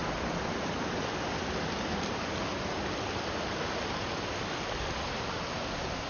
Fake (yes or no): no